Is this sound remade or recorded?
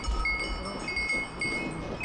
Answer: recorded